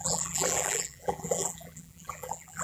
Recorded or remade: remade